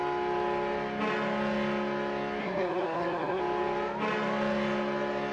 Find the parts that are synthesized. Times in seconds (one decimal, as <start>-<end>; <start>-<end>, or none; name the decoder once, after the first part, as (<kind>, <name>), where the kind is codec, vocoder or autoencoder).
2.4-3.4 (codec, SNAC)